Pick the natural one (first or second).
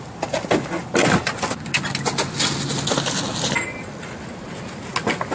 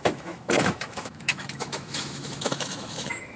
first